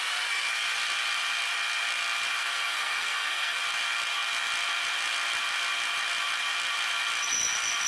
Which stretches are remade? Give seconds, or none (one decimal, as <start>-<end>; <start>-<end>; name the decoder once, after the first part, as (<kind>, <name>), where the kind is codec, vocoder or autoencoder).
2.4-3.6 (codec, SNAC)

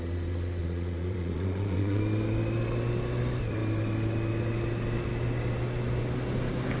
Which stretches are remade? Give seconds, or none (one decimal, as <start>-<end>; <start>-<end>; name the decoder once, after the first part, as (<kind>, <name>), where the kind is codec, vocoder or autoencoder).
0.6-2.0 (vocoder, Vocos)